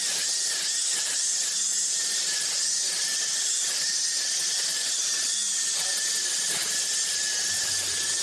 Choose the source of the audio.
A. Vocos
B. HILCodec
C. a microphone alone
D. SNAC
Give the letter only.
C